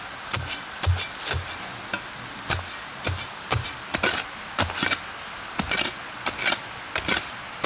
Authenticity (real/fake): real